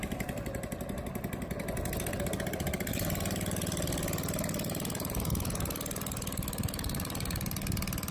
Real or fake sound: real